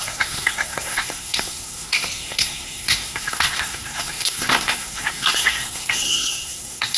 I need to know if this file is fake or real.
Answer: fake